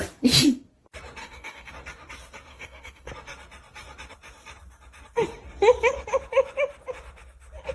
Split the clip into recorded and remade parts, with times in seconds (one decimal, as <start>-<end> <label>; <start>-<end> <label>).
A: 0.0-1.2 recorded; 1.2-1.7 remade; 1.7-2.5 recorded; 2.5-3.1 remade; 3.1-7.7 recorded